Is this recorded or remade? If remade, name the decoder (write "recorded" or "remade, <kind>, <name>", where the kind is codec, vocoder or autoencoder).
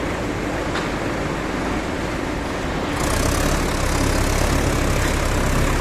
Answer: recorded